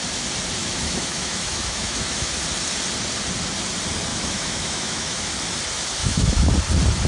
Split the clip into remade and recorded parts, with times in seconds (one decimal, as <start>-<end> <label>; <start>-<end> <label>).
0.0-0.6 recorded; 0.6-2.3 remade; 2.3-4.1 recorded; 4.1-5.3 remade; 5.3-6.0 recorded; 6.0-6.5 remade; 6.5-7.1 recorded